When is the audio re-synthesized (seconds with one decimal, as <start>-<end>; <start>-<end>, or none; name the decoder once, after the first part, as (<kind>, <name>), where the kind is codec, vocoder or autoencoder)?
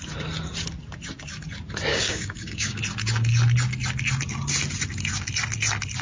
1.9-2.8 (codec, DAC)